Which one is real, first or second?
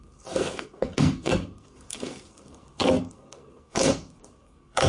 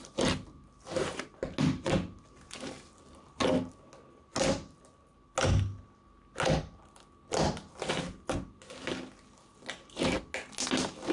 second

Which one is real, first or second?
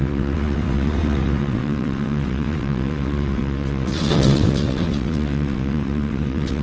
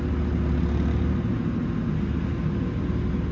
second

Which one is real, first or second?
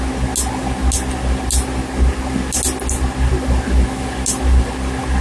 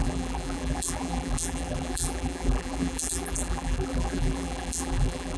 first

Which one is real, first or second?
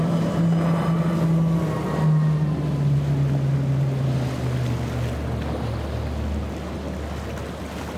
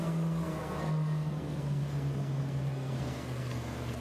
first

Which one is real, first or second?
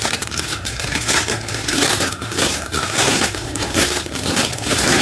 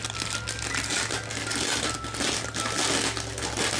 second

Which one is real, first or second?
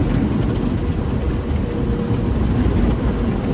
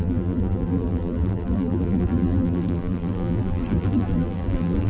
first